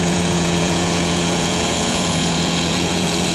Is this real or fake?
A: fake